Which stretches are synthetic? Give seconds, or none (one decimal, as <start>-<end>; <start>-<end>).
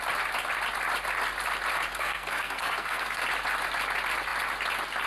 1.9-3.2